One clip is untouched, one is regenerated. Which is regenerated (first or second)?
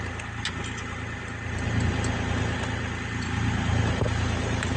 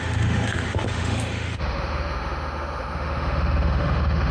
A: second